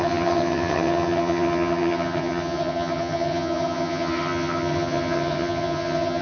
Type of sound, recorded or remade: remade